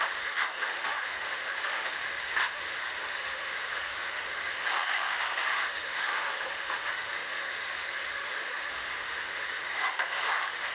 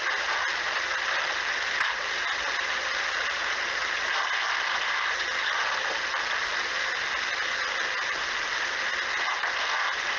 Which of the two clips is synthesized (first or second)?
first